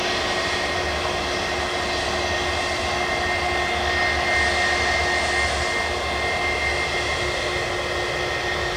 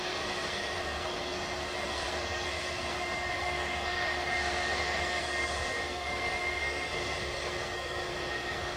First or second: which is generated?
second